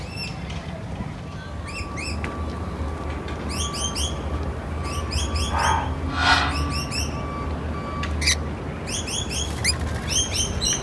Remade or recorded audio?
recorded